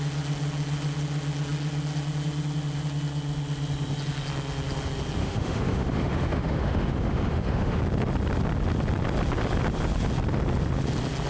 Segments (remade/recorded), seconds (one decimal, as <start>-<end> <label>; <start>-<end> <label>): 0.0-5.2 recorded; 5.2-7.8 remade; 7.8-11.3 recorded